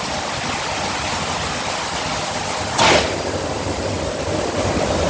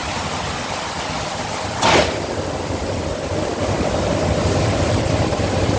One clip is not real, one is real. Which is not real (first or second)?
second